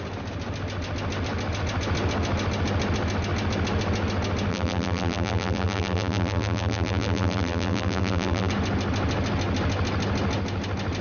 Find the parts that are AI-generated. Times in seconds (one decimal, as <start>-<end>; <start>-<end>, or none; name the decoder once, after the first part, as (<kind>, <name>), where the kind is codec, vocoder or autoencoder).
4.5-8.5 (vocoder, BigVGAN v2)